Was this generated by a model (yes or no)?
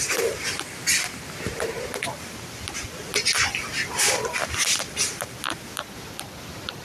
yes